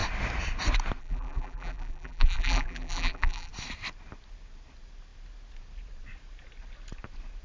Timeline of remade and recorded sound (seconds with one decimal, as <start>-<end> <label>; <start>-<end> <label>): 0.0-1.0 recorded; 1.0-3.5 remade; 3.5-7.4 recorded